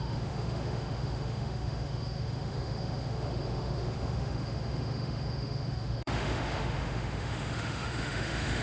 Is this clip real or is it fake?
fake